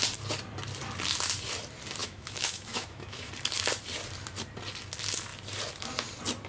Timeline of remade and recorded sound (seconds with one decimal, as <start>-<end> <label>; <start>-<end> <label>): 0.0-2.0 recorded; 2.0-3.3 remade; 3.3-6.5 recorded